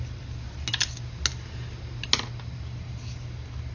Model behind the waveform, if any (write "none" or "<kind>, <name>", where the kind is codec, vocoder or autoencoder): none